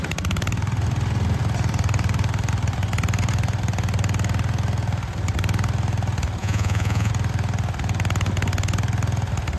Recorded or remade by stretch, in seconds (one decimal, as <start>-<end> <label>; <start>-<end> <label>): 0.0-6.4 recorded; 6.4-7.1 remade; 7.1-9.6 recorded